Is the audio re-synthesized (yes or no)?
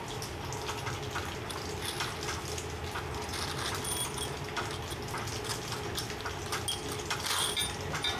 no